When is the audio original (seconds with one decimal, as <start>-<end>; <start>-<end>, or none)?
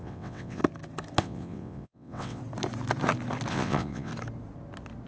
0.6-1.2; 2.4-3.5; 4.1-5.1